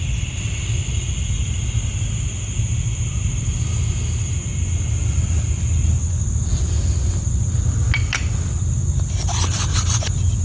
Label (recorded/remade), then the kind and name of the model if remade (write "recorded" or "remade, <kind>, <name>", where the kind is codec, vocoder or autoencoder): recorded